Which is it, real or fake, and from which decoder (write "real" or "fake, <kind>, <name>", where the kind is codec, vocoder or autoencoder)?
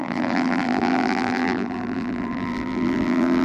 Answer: fake, vocoder, BigVGAN v2